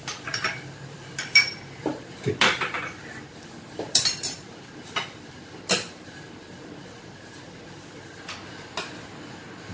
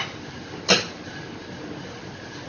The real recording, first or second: second